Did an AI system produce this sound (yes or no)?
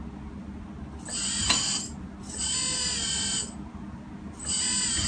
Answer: no